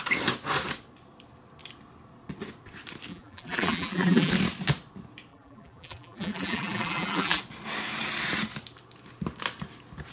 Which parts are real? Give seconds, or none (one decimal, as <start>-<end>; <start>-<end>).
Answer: 0.0-3.1; 4.3-5.3; 7.4-10.1